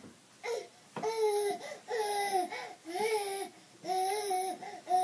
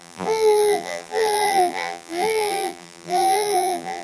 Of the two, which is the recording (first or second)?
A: first